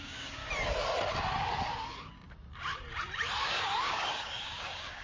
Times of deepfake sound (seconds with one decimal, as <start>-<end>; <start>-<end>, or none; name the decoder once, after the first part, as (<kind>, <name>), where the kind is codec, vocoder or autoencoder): 0.0-0.4 (codec, DAC); 3.4-5.0